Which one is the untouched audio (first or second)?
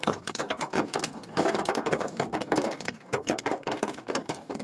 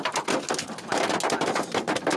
second